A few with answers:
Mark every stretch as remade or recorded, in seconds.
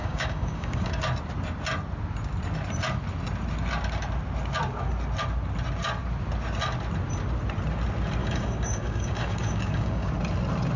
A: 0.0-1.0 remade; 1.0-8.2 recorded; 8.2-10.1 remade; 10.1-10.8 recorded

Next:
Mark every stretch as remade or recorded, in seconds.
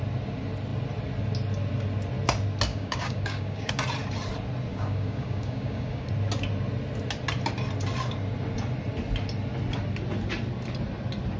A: 0.0-2.7 recorded; 2.7-3.7 remade; 3.7-4.7 recorded; 4.7-6.1 remade; 6.1-11.4 recorded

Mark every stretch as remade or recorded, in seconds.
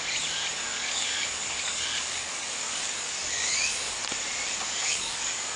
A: 0.0-0.7 recorded; 0.7-4.0 remade; 4.0-4.8 recorded; 4.8-5.6 remade